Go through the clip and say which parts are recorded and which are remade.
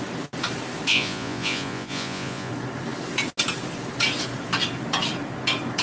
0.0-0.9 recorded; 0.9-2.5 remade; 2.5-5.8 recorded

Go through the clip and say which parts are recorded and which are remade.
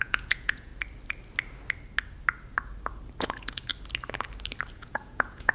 0.0-0.7 remade; 0.7-3.2 recorded; 3.2-3.7 remade; 3.7-4.7 recorded; 4.7-5.5 remade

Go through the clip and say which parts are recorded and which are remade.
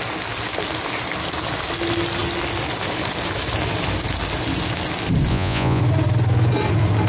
0.0-5.3 recorded; 5.3-5.8 remade; 5.8-7.1 recorded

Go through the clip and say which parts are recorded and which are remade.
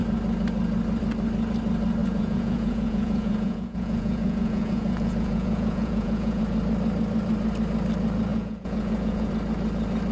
0.0-2.0 recorded; 2.0-6.4 remade; 6.4-8.3 recorded; 8.3-9.3 remade; 9.3-10.1 recorded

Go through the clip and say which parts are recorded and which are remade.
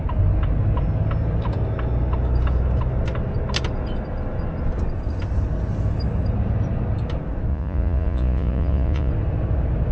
0.0-7.5 recorded; 7.5-9.1 remade; 9.1-9.9 recorded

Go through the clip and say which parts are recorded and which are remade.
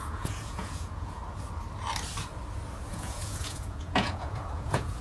0.0-1.2 remade; 1.2-2.9 recorded; 2.9-5.0 remade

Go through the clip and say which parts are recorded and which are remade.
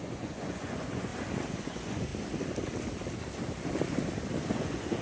0.0-1.1 remade; 1.1-1.6 recorded; 1.6-2.1 remade; 2.1-4.5 recorded; 4.5-5.0 remade